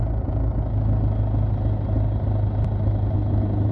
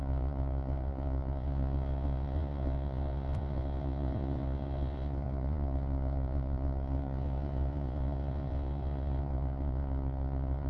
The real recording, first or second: first